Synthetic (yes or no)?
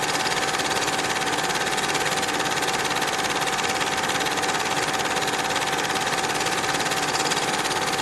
no